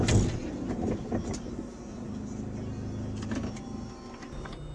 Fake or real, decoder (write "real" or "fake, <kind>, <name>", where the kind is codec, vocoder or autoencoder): real